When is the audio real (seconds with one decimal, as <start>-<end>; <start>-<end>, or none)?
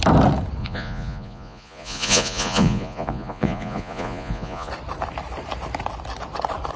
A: 0.0-0.6; 4.7-6.8